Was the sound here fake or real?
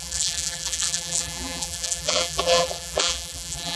fake